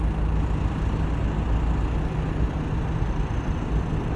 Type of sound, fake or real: real